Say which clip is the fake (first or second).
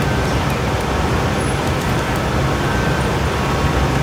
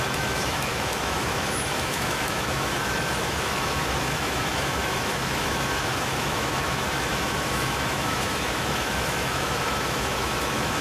second